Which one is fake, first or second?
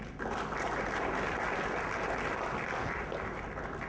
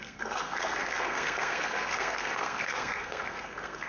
second